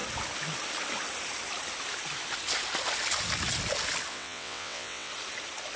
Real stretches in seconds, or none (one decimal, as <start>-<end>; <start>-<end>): 0.0-4.1; 5.1-5.8